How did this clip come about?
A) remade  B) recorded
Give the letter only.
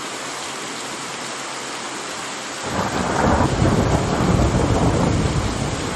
B